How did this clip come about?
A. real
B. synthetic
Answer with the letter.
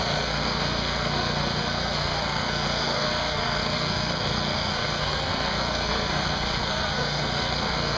B